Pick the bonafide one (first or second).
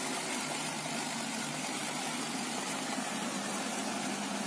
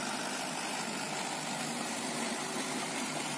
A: first